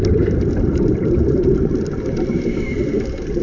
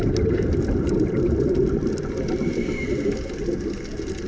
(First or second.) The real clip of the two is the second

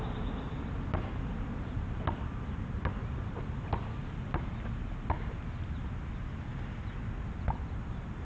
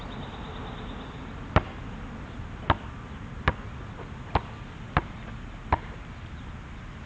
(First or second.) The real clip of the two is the second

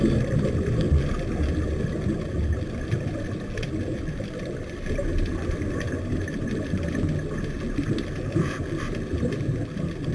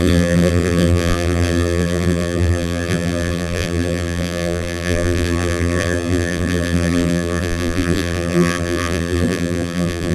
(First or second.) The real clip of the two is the first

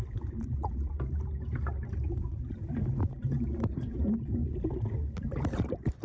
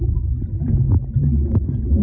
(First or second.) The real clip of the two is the second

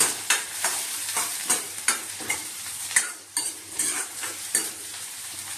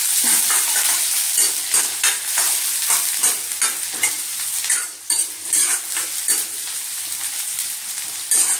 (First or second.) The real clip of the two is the second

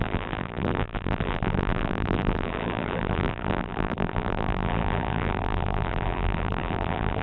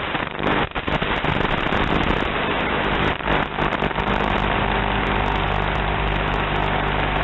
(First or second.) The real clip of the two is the second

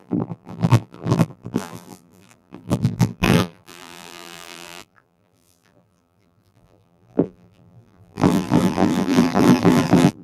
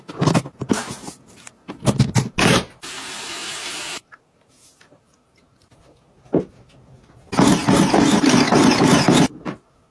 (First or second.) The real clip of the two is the second